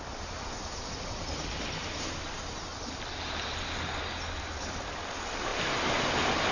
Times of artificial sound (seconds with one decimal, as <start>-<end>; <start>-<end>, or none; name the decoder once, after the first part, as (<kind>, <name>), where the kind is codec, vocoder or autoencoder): none